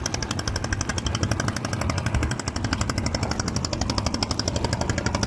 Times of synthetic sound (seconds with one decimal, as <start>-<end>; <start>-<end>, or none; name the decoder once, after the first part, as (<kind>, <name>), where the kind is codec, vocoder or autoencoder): none